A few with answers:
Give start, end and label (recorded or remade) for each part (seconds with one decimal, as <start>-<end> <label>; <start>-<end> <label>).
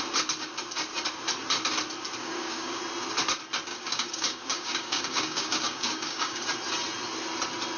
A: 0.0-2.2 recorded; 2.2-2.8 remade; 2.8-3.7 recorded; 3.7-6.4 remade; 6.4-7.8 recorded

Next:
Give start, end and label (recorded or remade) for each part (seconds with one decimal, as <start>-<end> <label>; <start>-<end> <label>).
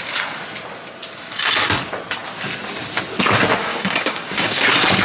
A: 0.0-3.7 recorded; 3.7-4.6 remade; 4.6-5.0 recorded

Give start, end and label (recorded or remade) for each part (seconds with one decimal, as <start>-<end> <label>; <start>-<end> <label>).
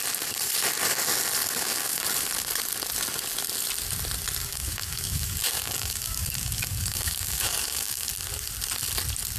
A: 0.0-1.4 recorded; 1.4-2.0 remade; 2.0-4.4 recorded; 4.4-8.1 remade; 8.1-9.4 recorded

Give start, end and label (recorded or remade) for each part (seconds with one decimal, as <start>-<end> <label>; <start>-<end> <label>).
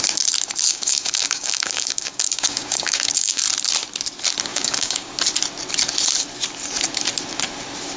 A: 0.0-0.7 recorded; 0.7-3.4 remade; 3.4-4.5 recorded; 4.5-5.1 remade; 5.1-8.0 recorded